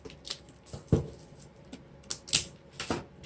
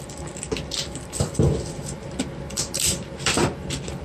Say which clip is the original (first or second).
first